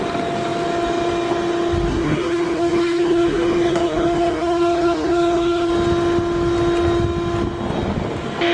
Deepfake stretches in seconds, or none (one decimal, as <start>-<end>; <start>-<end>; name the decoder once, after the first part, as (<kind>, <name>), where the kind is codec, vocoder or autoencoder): 1.9-5.7 (codec, SNAC)